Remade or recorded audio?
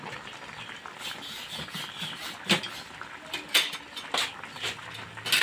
recorded